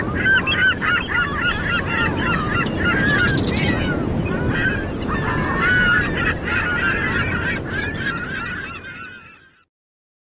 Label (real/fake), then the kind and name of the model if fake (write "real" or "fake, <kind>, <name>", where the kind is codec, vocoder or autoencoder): real